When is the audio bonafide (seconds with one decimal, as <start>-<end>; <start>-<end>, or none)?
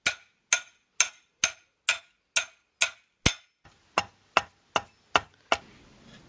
0.0-6.3